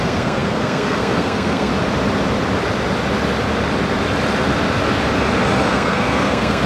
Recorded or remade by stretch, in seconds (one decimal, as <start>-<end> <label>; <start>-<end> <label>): 0.0-1.7 remade; 1.7-5.7 recorded; 5.7-6.7 remade